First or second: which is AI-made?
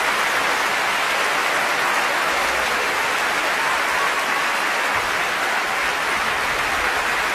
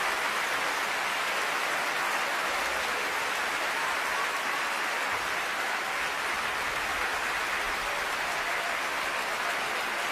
second